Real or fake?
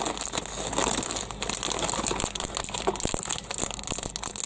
real